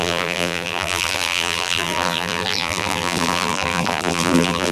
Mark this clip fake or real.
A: fake